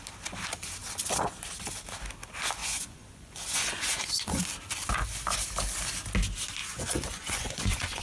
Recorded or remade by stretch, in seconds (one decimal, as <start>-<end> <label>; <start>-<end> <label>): 0.0-2.6 recorded; 2.6-4.4 remade; 4.4-6.6 recorded; 6.6-8.0 remade